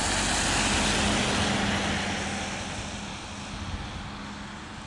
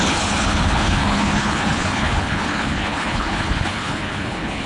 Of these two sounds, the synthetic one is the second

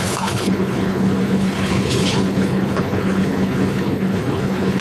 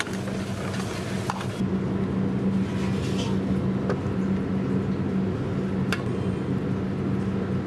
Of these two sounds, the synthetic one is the first